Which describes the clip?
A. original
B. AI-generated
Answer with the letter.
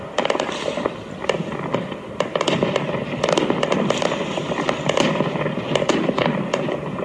A